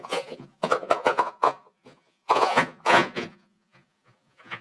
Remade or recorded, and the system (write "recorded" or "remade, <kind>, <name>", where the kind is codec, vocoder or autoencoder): remade, vocoder, Vocos